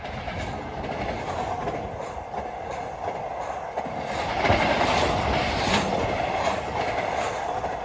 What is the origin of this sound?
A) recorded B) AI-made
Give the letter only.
A